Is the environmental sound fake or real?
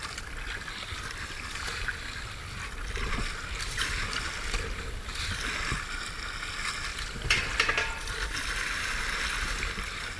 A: real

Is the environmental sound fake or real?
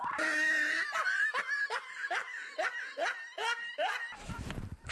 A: real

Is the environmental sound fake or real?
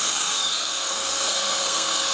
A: fake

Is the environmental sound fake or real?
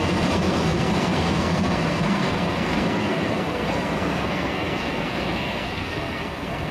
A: fake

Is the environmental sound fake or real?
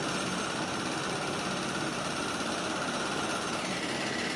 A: real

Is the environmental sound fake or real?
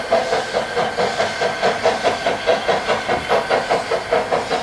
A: real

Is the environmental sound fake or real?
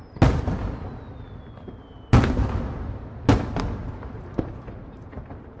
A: real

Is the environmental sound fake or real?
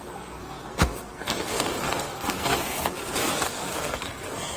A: fake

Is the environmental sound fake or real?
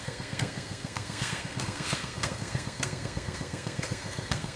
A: fake